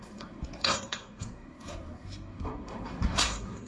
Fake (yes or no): yes